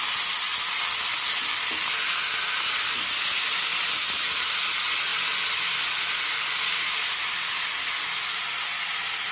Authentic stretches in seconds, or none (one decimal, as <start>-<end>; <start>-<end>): 0.0-9.3